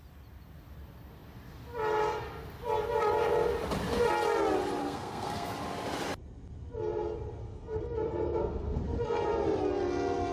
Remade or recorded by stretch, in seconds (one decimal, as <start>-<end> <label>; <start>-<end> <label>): 0.0-4.8 recorded; 4.8-5.5 remade; 5.5-7.4 recorded; 7.4-8.8 remade; 8.8-10.3 recorded